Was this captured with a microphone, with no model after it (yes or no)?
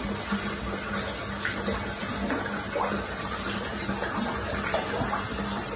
yes